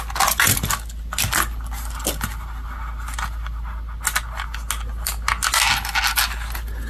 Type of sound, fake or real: real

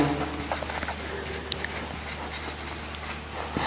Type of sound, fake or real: real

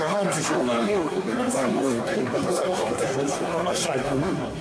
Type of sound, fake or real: fake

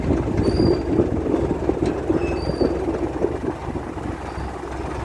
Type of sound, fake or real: real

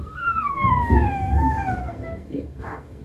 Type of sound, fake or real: fake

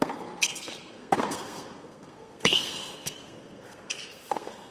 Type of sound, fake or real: fake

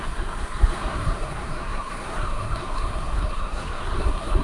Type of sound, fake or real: fake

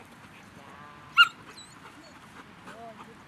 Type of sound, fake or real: real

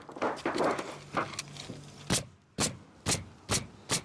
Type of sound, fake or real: real